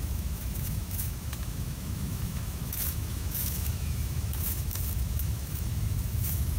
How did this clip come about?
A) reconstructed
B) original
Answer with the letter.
A